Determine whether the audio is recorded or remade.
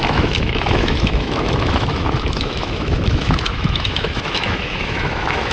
remade